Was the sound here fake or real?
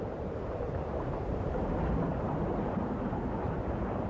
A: fake